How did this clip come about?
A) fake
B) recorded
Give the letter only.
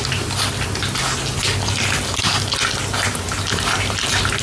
B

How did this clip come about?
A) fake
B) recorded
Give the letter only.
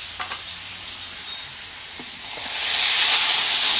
B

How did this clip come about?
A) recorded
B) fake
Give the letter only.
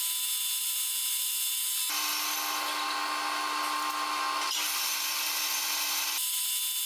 A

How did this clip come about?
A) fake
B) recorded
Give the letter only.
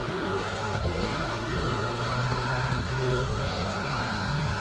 A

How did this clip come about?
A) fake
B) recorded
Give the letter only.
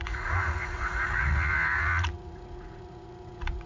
A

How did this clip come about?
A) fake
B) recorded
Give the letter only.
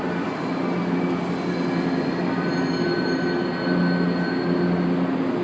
B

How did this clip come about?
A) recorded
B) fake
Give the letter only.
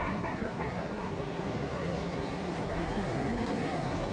B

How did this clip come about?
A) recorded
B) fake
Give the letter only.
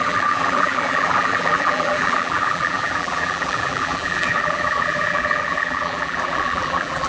B